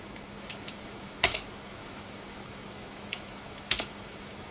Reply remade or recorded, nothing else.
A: remade